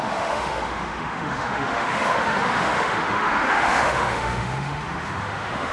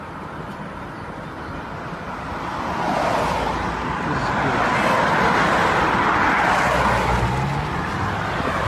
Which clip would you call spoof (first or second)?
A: first